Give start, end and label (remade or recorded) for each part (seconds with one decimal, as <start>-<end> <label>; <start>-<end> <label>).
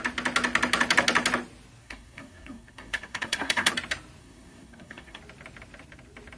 0.0-1.8 recorded; 1.8-3.7 remade; 3.7-4.2 recorded; 4.2-5.2 remade; 5.2-6.4 recorded